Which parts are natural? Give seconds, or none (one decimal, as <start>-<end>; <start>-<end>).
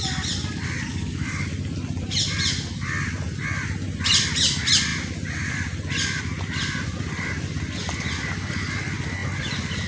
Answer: 0.0-0.9; 1.5-9.9